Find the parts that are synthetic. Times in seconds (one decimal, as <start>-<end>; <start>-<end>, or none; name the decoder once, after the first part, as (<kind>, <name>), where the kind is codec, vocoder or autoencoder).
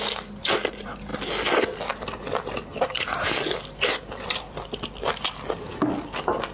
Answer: none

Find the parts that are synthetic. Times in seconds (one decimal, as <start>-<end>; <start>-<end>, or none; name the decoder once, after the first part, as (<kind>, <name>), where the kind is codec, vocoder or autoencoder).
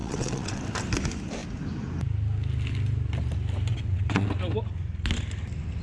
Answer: 0.0-0.6 (vocoder, WaveNeXt); 3.7-4.3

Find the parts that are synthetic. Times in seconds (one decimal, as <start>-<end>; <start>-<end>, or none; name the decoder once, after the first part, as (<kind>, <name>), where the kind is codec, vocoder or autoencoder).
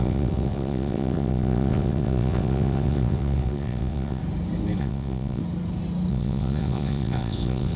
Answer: 0.0-4.2 (vocoder, WaveNeXt); 4.8-5.4; 6.1-7.8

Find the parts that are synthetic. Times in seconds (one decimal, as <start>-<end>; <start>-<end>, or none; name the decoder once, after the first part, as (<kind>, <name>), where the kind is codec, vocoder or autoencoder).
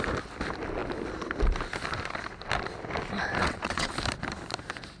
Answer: 3.4-3.9 (vocoder, WaveNeXt)